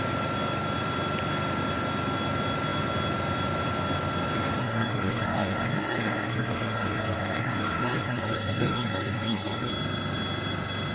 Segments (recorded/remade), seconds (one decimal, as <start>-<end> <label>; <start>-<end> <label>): 0.0-4.6 recorded; 4.6-9.7 remade; 9.7-10.9 recorded

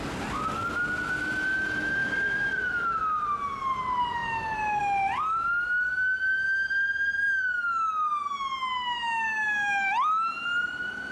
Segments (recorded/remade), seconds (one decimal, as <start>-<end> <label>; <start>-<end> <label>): 0.0-2.0 recorded; 2.0-3.0 remade; 3.0-11.1 recorded